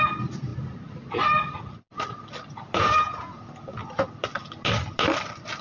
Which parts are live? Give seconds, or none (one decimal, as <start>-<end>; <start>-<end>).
0.0-2.8; 3.4-5.6